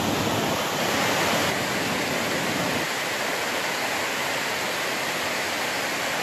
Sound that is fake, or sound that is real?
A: real